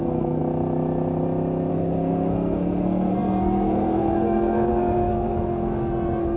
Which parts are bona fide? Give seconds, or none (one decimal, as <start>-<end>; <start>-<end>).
0.4-1.7